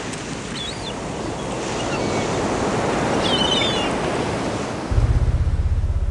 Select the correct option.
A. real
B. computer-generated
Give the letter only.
A